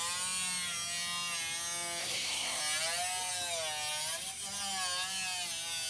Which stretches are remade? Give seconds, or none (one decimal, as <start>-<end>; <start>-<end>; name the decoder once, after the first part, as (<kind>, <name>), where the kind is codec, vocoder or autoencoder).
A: 2.0-2.6 (codec, SNAC)